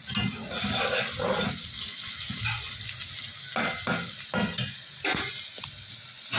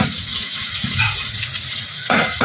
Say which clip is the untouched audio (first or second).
first